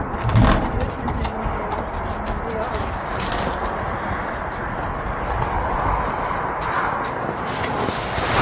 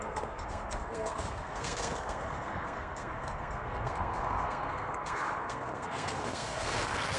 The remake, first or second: second